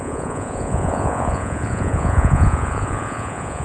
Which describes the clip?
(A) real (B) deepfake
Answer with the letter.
B